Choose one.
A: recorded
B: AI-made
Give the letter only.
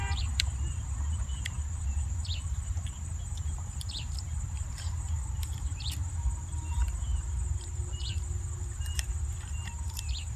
B